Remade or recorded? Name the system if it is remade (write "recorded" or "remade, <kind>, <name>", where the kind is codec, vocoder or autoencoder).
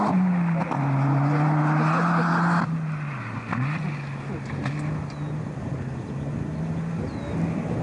recorded